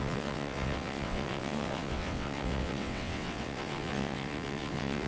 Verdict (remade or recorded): remade